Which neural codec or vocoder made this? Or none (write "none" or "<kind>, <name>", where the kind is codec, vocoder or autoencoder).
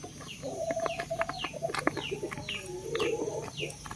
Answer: none